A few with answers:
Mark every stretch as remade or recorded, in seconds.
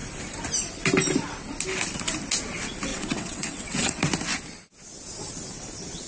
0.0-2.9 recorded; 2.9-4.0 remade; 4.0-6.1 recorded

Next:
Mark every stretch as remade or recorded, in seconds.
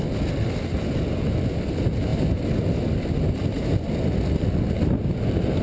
0.0-5.6 recorded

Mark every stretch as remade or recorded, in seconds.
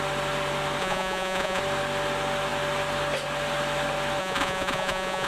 0.0-0.8 recorded; 0.8-1.6 remade; 1.6-4.2 recorded; 4.2-5.3 remade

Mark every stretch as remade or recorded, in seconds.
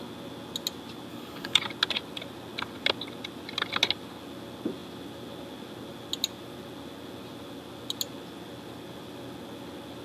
0.0-1.1 recorded; 1.1-1.6 remade; 1.6-10.0 recorded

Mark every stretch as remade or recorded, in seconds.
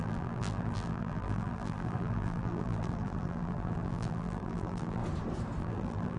0.0-5.0 remade; 5.0-5.6 recorded; 5.6-6.2 remade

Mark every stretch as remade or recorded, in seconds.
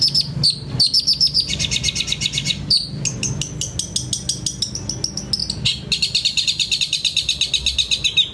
0.0-8.3 recorded